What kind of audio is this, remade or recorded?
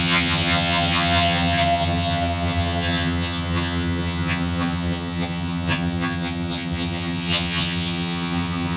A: remade